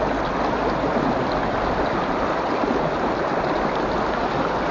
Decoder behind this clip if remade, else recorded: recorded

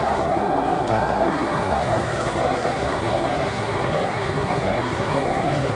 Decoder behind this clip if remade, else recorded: remade, codec, SNAC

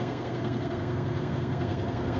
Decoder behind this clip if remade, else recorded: remade, codec, SNAC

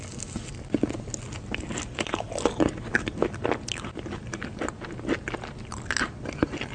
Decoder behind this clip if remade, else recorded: recorded